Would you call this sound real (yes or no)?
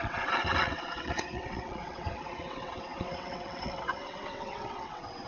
no